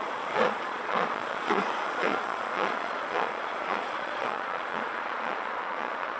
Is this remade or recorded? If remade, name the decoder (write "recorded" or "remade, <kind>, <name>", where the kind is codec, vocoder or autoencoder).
remade, vocoder, Vocos